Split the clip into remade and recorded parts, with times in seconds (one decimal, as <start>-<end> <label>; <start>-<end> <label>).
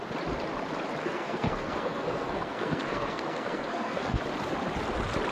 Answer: 0.0-1.0 recorded; 1.0-4.2 remade; 4.2-5.3 recorded